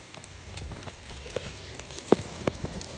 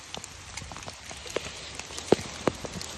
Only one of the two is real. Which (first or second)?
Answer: second